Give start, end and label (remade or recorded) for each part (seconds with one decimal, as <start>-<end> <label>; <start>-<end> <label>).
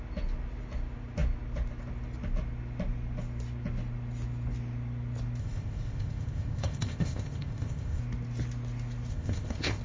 0.0-5.4 recorded; 5.4-8.0 remade; 8.0-9.1 recorded; 9.1-9.8 remade